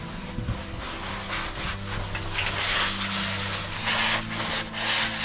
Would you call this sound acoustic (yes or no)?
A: yes